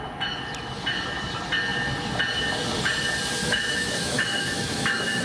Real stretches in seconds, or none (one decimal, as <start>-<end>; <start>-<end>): 0.0-3.4